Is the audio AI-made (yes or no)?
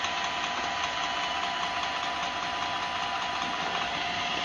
no